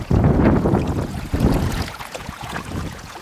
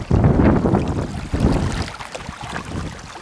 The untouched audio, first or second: second